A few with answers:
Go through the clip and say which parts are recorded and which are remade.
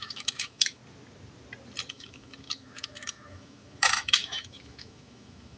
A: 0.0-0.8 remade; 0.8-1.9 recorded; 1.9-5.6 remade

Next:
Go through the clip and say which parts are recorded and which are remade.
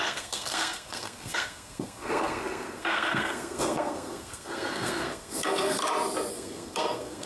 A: 0.0-5.8 remade; 5.8-6.3 recorded; 6.3-7.3 remade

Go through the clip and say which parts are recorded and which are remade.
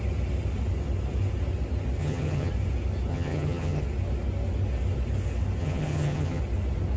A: 0.0-2.0 recorded; 2.0-2.5 remade; 2.5-3.1 recorded; 3.1-3.8 remade; 3.8-5.6 recorded; 5.6-6.4 remade; 6.4-7.0 recorded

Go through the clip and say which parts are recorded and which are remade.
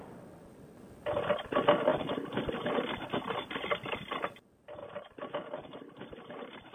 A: 0.0-4.8 recorded; 4.8-6.7 remade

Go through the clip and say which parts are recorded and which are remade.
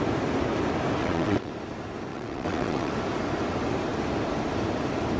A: 0.0-1.0 recorded; 1.0-1.5 remade; 1.5-2.1 recorded; 2.1-2.9 remade; 2.9-5.2 recorded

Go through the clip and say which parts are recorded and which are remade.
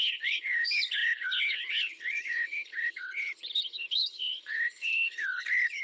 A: 0.0-5.8 remade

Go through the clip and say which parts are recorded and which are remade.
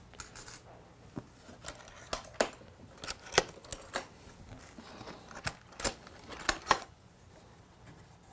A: 0.0-6.6 recorded; 6.6-7.2 remade; 7.2-8.3 recorded